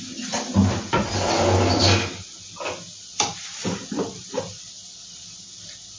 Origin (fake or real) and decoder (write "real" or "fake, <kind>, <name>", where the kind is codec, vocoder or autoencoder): real